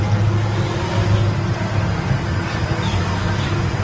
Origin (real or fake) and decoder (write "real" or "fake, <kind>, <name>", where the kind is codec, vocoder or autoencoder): real